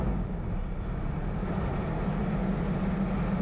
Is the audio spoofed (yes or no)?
no